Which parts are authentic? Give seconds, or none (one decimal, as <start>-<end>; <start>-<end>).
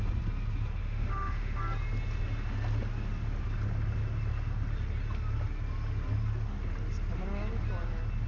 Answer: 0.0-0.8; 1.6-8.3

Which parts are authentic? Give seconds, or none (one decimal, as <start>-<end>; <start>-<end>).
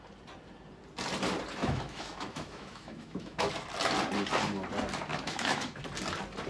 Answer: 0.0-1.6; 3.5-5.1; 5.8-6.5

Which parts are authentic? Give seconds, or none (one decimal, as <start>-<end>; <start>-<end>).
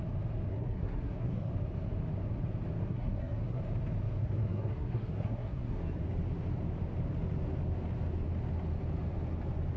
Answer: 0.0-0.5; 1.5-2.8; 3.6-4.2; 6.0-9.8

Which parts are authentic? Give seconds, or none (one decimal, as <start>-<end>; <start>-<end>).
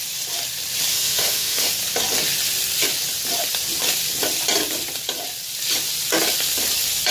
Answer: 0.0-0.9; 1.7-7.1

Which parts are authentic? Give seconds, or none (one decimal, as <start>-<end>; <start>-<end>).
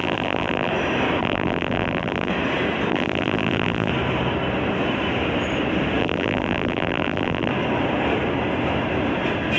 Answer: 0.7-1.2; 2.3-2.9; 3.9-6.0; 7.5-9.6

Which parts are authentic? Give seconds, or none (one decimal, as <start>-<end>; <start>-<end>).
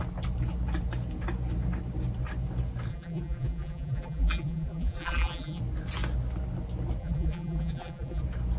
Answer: 0.0-2.9; 5.6-7.0; 8.2-8.6